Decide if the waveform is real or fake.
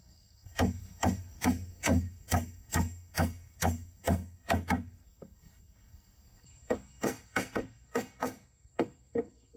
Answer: fake